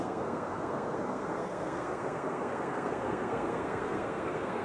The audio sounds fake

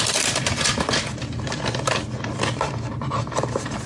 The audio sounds real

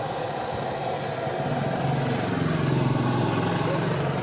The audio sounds real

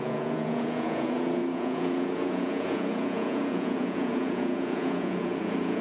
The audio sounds fake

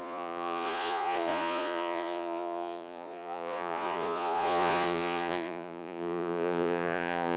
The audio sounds fake